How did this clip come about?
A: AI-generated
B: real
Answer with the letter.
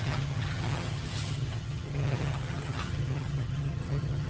A